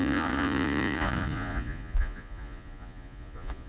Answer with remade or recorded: remade